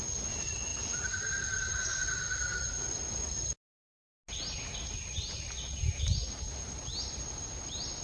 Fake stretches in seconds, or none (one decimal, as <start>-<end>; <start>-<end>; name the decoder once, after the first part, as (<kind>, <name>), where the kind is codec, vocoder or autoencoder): none